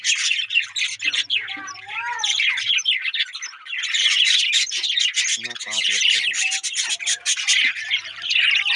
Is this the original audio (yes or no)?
no